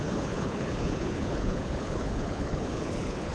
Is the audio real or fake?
fake